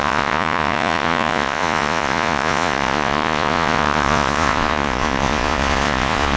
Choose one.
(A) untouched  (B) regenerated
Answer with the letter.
B